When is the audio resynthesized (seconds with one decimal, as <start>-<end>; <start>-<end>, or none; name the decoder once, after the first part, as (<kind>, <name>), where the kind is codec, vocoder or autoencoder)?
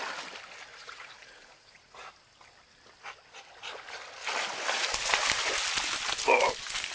0.7-2.1 (vocoder, Vocos)